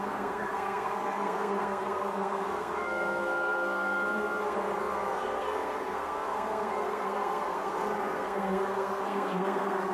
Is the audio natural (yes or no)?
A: no